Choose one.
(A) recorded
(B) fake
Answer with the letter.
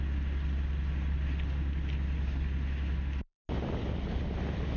A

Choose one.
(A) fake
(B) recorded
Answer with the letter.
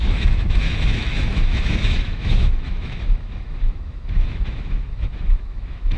A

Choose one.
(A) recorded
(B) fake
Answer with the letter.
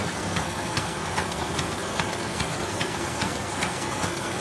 B